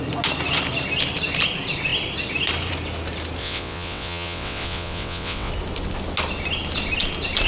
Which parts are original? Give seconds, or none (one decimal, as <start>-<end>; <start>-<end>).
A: 0.0-3.4; 5.5-7.5